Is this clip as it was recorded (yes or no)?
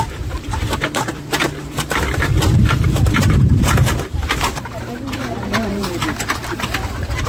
no